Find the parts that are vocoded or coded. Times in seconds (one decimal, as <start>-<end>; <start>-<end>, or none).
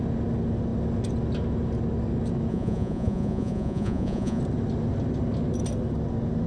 2.5-4.4